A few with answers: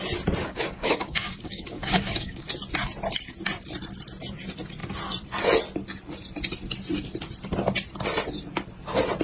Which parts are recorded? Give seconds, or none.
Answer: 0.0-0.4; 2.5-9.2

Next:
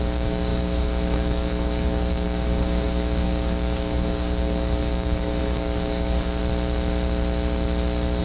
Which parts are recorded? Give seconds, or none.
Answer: 6.4-8.2

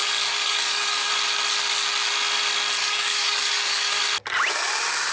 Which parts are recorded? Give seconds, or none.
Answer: 1.1-2.8; 4.0-5.1

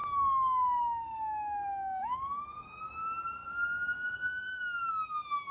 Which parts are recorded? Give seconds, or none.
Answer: 2.8-5.5

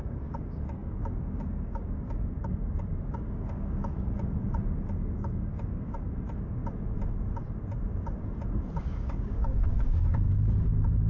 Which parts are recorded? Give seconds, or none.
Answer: 6.6-8.8

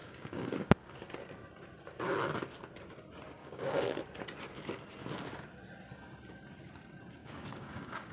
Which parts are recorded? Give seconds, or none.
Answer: 0.7-3.4; 4.0-7.2